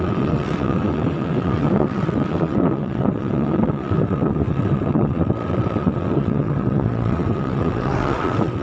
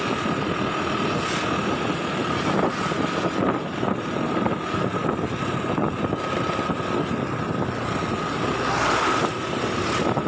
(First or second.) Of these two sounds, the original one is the second